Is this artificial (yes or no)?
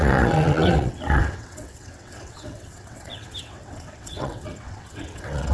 yes